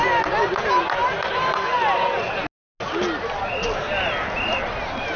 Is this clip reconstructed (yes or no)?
no